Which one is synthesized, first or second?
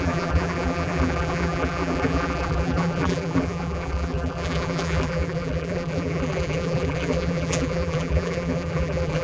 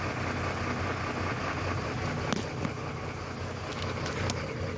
first